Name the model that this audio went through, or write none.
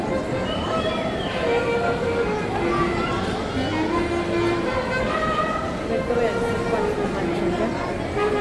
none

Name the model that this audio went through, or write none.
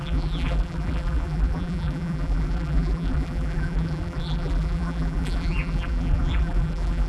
vocoder, BigVGAN v2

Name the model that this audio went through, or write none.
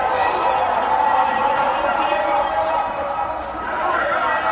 vocoder, BigVGAN v2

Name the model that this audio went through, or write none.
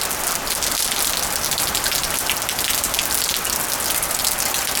none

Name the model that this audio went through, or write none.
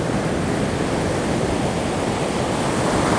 none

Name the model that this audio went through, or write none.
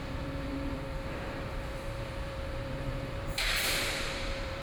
vocoder, BigVGAN v2